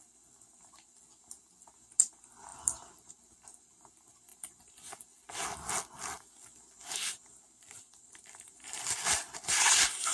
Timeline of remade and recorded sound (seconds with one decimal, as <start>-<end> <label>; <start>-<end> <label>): 0.0-2.5 recorded; 2.5-3.1 remade; 3.1-4.3 recorded; 4.3-5.0 remade; 5.0-6.8 recorded; 6.8-8.8 remade; 8.8-10.1 recorded